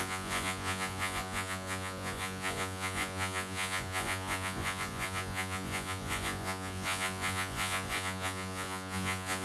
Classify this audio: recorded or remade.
remade